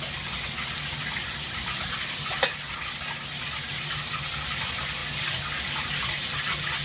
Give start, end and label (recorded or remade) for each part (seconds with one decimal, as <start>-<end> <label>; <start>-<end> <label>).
0.0-6.8 recorded